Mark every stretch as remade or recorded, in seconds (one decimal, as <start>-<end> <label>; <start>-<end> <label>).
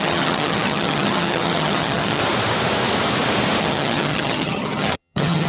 0.0-2.2 remade; 2.2-3.6 recorded; 3.6-5.5 remade